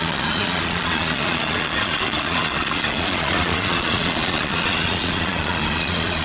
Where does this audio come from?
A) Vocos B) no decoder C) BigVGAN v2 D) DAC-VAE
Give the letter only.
A